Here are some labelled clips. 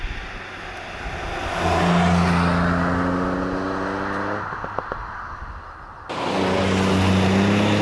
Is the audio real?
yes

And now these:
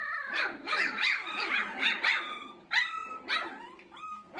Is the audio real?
no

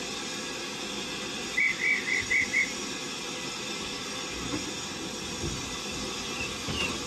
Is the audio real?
yes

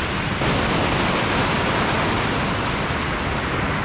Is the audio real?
yes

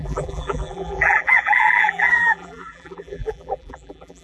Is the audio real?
no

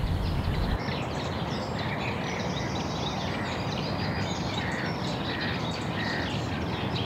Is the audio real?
no